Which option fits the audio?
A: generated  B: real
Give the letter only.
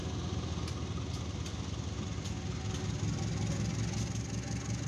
B